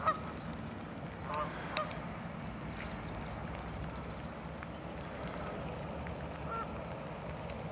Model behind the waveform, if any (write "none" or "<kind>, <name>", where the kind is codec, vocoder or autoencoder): none